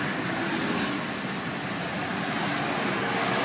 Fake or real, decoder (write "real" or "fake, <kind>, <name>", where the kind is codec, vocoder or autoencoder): real